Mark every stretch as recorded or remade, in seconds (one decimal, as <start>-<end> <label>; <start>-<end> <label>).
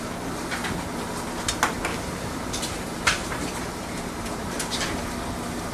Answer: 0.0-1.9 recorded; 1.9-5.0 remade; 5.0-5.7 recorded